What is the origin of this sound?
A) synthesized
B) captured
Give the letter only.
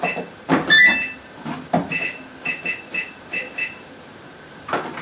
A